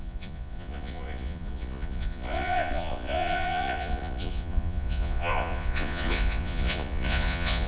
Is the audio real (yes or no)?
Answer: no